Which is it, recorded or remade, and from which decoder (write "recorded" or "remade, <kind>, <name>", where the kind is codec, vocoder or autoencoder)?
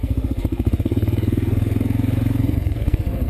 remade, codec, SNAC